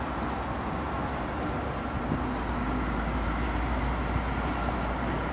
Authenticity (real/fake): real